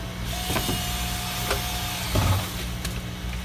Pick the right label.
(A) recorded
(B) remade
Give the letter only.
A